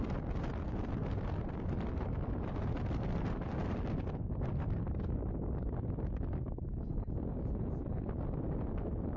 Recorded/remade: recorded